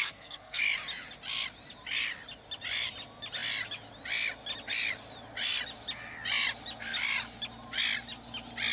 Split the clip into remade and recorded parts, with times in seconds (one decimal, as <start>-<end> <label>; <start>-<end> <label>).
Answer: 0.0-0.6 remade; 0.6-8.7 recorded

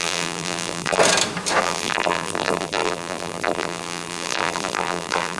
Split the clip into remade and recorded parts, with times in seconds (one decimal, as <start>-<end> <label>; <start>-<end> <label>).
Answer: 0.0-1.0 remade; 1.0-1.6 recorded; 1.6-5.4 remade

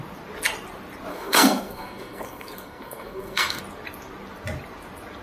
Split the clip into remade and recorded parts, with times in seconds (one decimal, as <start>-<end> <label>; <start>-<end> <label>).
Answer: 0.0-1.1 recorded; 1.1-3.6 remade; 3.6-5.2 recorded

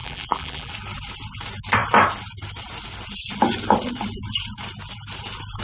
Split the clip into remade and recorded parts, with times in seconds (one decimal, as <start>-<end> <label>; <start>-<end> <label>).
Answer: 0.0-0.7 remade; 0.7-5.6 recorded

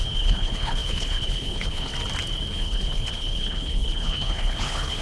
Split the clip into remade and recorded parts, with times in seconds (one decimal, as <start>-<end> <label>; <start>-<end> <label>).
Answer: 0.0-1.9 remade; 1.9-2.5 recorded; 2.5-5.0 remade